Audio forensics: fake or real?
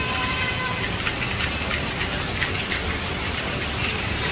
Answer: fake